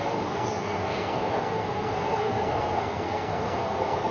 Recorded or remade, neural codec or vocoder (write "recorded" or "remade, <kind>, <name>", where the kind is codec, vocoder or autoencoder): remade, codec, SNAC